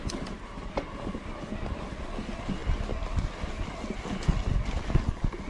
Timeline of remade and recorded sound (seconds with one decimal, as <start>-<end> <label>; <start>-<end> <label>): 0.0-5.5 recorded